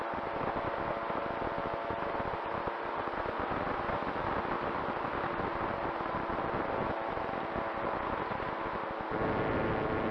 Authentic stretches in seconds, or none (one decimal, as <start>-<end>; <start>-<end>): 0.0-10.1